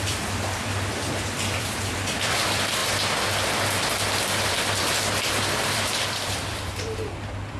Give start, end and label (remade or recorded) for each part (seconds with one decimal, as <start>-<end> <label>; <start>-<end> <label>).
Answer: 0.0-2.8 remade; 2.8-4.8 recorded; 4.8-7.6 remade